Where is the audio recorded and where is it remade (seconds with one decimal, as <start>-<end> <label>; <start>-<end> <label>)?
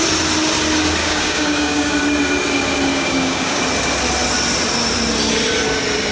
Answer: 0.0-1.0 recorded; 1.0-1.9 remade; 1.9-2.9 recorded; 2.9-3.6 remade; 3.6-6.1 recorded